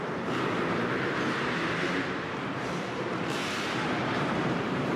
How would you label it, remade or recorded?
remade